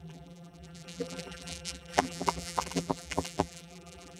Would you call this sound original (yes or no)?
no